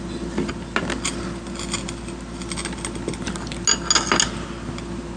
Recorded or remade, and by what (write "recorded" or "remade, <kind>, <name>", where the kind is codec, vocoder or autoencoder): recorded